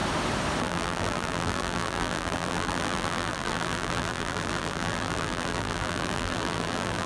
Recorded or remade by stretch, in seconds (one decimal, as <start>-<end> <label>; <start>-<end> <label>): 0.0-0.6 recorded; 0.6-7.1 remade